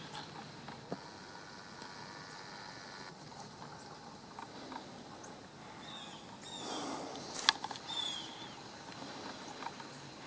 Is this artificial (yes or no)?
no